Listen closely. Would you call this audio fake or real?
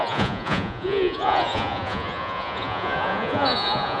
fake